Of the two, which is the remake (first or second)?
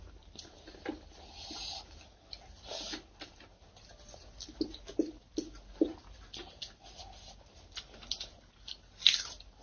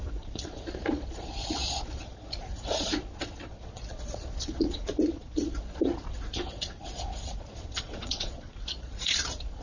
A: second